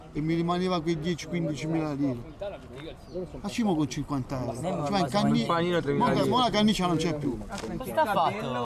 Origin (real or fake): real